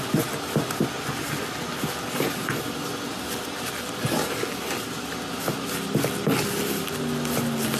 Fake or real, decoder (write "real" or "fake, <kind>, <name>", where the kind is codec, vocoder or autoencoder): real